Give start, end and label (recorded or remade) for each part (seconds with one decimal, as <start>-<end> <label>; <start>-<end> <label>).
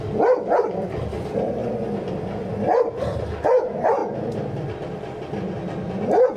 0.0-6.4 recorded